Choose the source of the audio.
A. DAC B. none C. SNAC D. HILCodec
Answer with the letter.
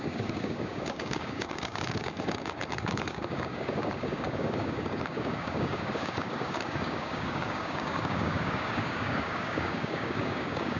A